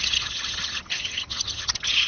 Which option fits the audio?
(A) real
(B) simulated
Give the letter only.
B